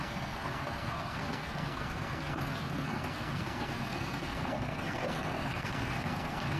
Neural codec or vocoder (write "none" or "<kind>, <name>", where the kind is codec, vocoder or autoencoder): codec, SNAC